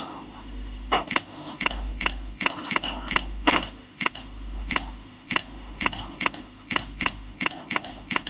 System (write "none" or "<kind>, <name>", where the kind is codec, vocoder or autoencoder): autoencoder, DAC-VAE